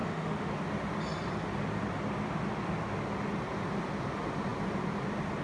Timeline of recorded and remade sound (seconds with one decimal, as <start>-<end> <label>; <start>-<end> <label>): 0.0-0.5 remade; 0.5-5.4 recorded